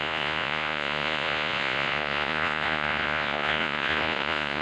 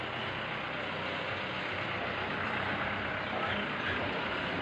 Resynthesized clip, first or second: first